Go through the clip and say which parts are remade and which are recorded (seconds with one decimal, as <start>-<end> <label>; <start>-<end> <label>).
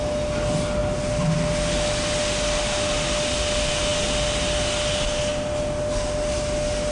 0.0-6.9 recorded